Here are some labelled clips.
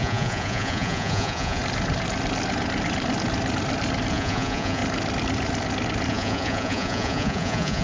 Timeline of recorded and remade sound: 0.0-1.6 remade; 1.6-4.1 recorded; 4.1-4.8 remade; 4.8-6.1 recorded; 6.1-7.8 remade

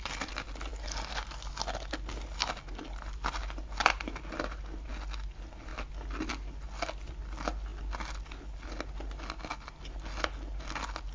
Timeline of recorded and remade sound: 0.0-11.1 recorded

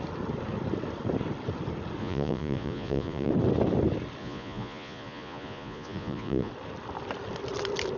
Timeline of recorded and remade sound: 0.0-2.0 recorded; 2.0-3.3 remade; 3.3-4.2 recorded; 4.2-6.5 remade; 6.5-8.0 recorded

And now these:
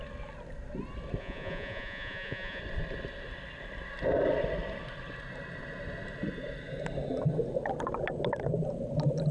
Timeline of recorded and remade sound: 0.0-1.2 recorded; 1.2-2.6 remade; 2.6-9.3 recorded

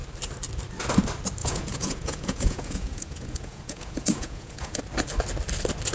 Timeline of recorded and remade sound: 0.0-1.4 recorded; 1.4-4.8 remade; 4.8-5.9 recorded

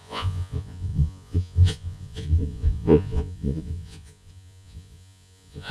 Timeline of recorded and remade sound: 0.0-5.7 remade